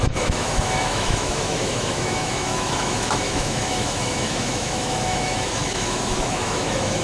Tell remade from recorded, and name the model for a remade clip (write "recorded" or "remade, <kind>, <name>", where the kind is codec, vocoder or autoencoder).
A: remade, autoencoder, DAC-VAE